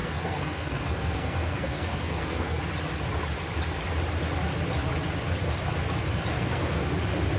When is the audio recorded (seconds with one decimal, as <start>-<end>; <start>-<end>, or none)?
2.6-6.3; 6.8-7.4